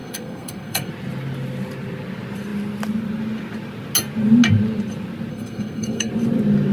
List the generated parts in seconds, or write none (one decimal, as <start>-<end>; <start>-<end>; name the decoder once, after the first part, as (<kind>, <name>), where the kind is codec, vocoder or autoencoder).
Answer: 0.0-0.9 (codec, SNAC); 5.3-6.1